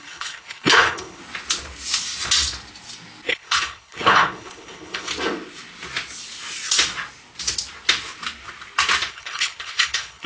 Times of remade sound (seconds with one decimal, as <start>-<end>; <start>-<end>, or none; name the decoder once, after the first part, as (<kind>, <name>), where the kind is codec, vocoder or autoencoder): 0.0-1.2 (codec, HILCodec); 3.3-5.1; 9.1-10.3